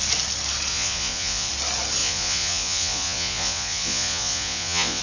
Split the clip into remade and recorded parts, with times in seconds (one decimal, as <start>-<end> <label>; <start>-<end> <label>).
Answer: 0.0-0.7 recorded; 0.7-1.5 remade; 1.5-2.0 recorded; 2.0-5.0 remade